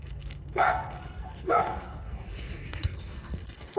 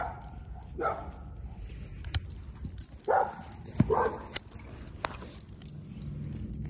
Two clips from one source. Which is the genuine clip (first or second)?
second